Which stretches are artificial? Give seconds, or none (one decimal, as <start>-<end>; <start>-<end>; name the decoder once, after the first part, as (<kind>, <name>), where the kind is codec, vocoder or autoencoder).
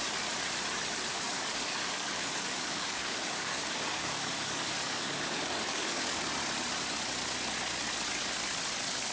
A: 1.1-6.2 (codec, DAC)